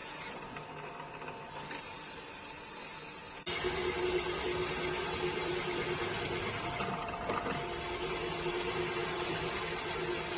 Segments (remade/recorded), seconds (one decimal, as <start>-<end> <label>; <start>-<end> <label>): 0.0-5.4 recorded; 5.4-7.3 remade; 7.3-9.0 recorded; 9.0-9.5 remade; 9.5-10.4 recorded